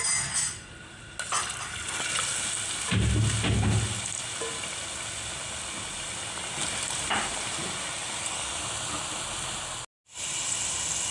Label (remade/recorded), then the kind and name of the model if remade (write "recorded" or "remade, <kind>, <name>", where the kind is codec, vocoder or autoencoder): recorded